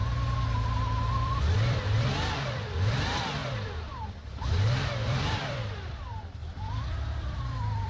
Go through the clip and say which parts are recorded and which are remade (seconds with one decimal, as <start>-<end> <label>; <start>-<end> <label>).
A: 0.0-1.1 recorded; 1.1-6.4 remade; 6.4-6.9 recorded; 6.9-7.9 remade